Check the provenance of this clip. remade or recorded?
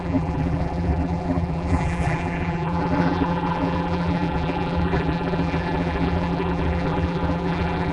remade